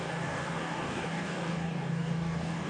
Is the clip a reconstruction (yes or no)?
yes